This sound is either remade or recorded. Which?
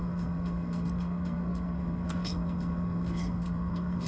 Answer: remade